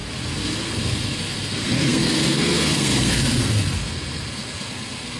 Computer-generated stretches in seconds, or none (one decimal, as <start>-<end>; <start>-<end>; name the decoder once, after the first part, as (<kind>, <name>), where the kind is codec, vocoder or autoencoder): 0.6-5.2 (codec, SNAC)